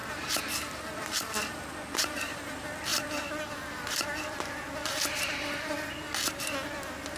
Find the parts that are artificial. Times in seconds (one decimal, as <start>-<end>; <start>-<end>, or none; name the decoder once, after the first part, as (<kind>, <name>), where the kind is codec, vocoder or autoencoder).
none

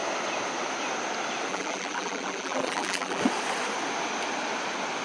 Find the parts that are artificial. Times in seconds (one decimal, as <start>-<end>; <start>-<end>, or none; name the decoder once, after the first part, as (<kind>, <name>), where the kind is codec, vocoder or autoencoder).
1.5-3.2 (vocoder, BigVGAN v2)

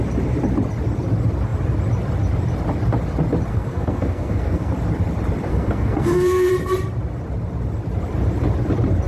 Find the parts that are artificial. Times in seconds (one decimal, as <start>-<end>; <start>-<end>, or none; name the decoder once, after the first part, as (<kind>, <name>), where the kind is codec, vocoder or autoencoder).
3.5-4.7 (codec, SNAC); 5.5-6.5

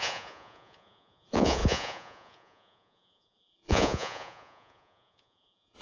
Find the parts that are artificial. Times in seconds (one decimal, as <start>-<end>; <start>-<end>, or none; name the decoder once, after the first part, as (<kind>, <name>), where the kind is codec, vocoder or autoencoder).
0.0-5.8 (vocoder, Vocos)